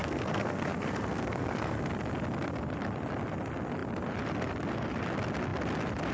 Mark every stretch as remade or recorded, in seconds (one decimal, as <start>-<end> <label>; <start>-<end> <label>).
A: 0.0-1.8 remade; 1.8-6.1 recorded